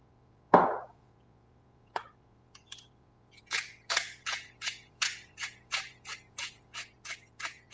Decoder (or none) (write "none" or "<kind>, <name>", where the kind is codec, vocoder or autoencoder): vocoder, Vocos